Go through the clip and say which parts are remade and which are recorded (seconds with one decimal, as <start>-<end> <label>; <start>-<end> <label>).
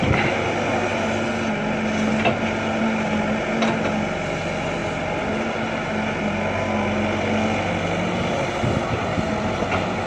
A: 0.0-10.1 recorded